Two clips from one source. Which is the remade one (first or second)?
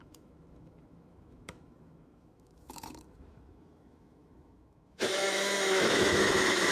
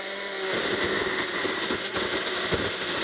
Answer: first